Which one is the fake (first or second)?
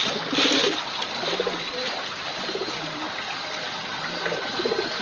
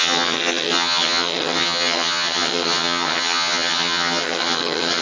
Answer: second